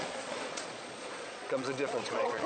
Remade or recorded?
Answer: remade